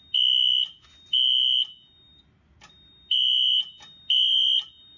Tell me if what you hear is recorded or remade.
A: recorded